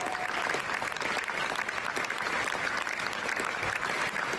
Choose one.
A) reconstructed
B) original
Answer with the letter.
A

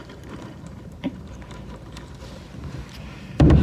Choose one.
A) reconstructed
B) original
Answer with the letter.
A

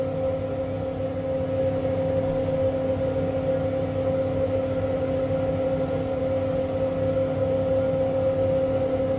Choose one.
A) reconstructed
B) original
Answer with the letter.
B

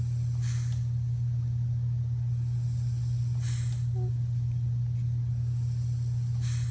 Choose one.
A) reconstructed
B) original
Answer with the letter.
B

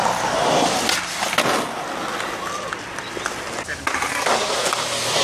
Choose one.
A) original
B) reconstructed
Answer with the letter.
A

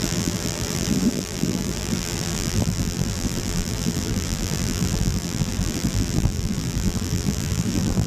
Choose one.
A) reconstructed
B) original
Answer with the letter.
A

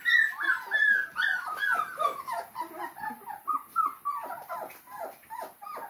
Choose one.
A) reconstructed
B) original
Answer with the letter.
B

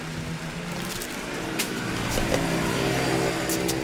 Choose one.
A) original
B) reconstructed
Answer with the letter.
A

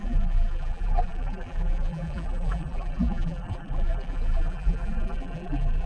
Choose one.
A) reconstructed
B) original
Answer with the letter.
A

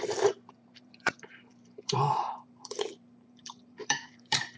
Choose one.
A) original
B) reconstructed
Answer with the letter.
B